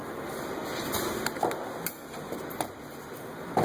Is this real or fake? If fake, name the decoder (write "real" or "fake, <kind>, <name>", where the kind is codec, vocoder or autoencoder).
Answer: real